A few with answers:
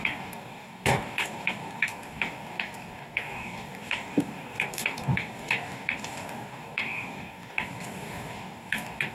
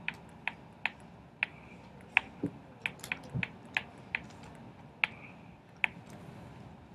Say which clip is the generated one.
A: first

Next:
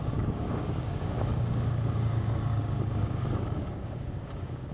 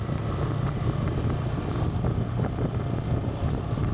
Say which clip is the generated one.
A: first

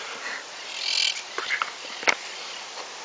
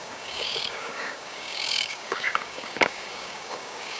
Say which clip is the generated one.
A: second